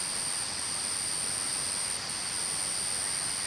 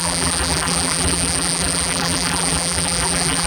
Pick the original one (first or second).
first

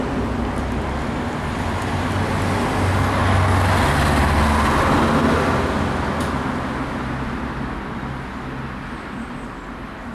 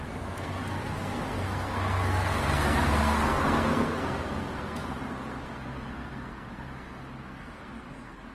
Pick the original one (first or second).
first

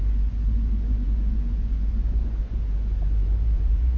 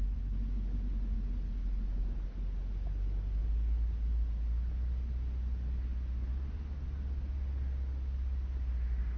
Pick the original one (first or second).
second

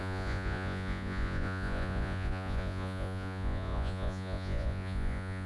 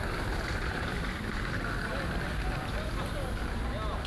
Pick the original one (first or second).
second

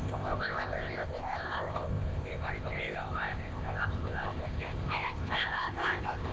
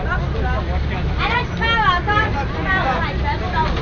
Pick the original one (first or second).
second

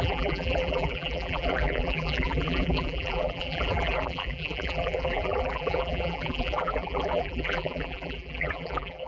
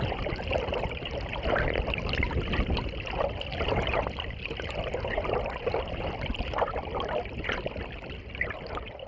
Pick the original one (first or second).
second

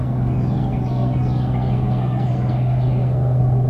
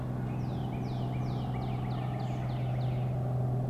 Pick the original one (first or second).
second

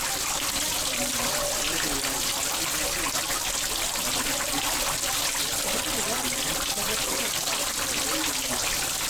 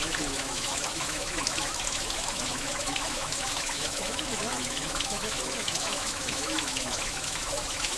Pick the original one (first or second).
first